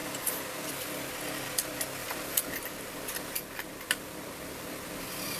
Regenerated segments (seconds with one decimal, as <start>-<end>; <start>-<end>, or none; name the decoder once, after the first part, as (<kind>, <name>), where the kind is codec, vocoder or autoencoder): 2.0-5.4 (vocoder, BigVGAN v2)

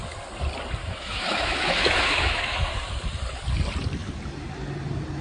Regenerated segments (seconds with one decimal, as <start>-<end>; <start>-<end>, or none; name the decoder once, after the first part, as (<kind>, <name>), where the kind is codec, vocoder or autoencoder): 0.8-2.7 (autoencoder, DAC-VAE)

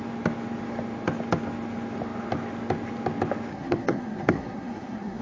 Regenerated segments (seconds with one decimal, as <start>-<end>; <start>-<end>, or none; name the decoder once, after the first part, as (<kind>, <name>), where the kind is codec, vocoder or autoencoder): 3.5-5.2 (codec, SNAC)

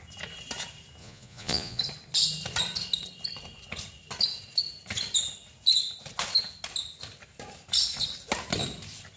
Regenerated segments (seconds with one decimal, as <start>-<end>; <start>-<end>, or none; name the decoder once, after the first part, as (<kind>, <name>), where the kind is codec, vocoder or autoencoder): 1.0-1.8 (vocoder, Vocos)

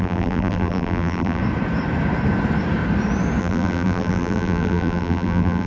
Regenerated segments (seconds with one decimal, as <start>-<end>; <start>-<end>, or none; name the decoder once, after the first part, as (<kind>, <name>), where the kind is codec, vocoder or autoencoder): 0.0-1.4 (vocoder, BigVGAN v2); 3.4-5.7

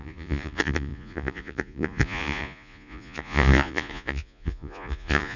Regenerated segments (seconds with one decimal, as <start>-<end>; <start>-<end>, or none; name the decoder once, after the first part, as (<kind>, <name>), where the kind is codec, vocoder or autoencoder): 0.0-5.4 (vocoder, Vocos)

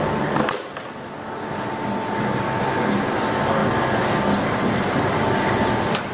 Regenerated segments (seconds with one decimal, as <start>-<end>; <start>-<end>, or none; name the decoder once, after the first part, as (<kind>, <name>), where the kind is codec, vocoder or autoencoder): none

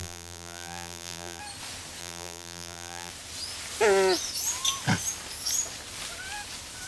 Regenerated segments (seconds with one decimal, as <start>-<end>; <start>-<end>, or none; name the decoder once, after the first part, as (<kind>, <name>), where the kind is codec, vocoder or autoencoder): 0.0-1.4 (vocoder, BigVGAN v2); 2.0-3.1